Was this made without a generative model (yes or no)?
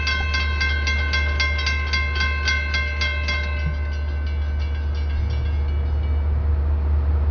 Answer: yes